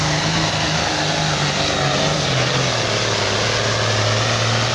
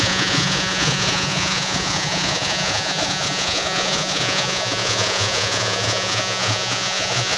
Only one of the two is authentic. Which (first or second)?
first